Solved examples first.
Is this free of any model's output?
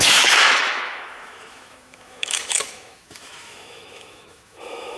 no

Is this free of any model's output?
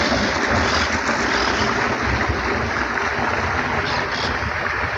yes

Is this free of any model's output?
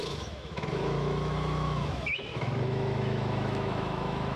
no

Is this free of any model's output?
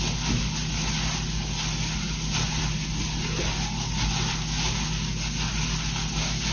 yes